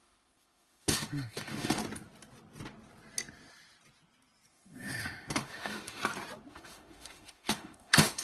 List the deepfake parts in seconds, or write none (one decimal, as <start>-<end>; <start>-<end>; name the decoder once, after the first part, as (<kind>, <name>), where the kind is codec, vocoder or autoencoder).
0.0-1.8 (autoencoder, DAC-VAE); 4.5-6.0; 6.5-8.2